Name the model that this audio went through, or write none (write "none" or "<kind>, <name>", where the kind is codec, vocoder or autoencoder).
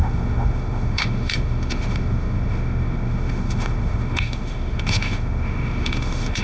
autoencoder, DAC-VAE